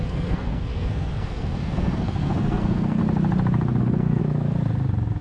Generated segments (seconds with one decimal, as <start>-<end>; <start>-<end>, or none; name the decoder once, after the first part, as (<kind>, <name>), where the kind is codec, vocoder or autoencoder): 0.0-3.0 (codec, SNAC); 3.8-4.2